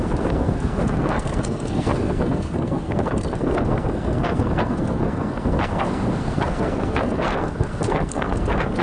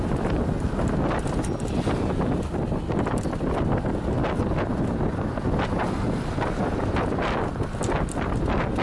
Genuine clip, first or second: second